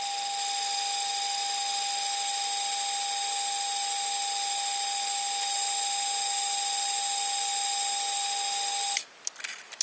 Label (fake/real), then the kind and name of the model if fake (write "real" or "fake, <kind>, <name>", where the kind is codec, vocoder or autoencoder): real